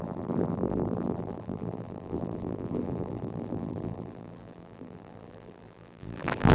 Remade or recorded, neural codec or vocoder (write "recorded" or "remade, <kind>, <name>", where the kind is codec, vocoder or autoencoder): remade, vocoder, BigVGAN v2